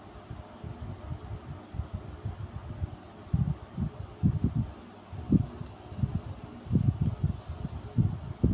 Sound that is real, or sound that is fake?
real